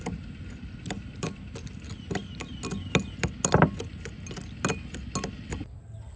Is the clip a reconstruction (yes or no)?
no